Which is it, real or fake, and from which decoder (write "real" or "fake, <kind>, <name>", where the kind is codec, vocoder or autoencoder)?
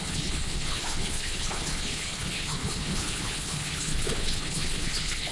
fake, codec, HILCodec